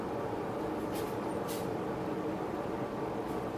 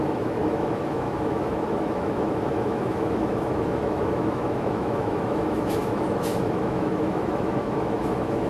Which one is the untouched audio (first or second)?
first